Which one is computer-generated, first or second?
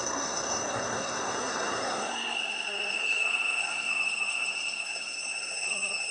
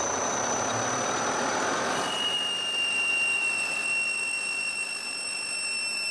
first